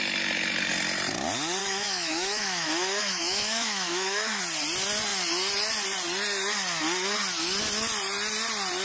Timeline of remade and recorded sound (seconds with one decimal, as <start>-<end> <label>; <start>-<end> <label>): 0.0-1.6 recorded; 1.6-4.4 remade; 4.4-8.8 recorded

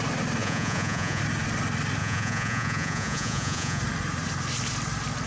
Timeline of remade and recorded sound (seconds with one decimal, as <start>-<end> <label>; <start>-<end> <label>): 0.0-0.4 recorded; 0.4-1.2 remade; 1.2-2.0 recorded; 2.0-3.8 remade; 3.8-5.3 recorded